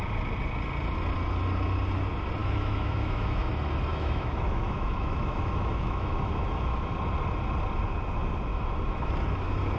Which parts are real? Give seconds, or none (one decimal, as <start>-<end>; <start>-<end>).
0.0-2.4; 3.5-3.9; 6.9-8.5; 9.1-9.8